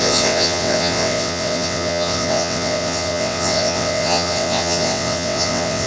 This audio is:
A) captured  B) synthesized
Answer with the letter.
B